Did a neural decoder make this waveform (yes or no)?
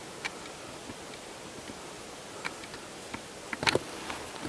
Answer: no